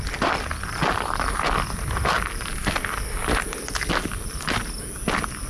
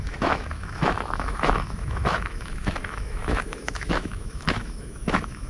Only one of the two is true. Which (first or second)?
first